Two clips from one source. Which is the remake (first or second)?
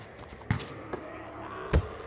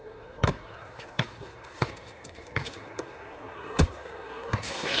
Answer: second